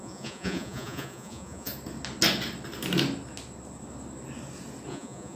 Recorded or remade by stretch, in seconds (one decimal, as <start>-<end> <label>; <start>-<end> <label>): 0.0-1.7 remade; 1.7-4.9 recorded; 4.9-5.4 remade